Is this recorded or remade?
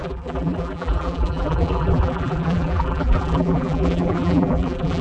remade